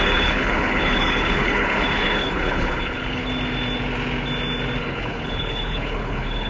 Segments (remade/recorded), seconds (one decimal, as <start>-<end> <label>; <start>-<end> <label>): 0.0-3.2 remade; 3.2-4.8 recorded; 4.8-6.5 remade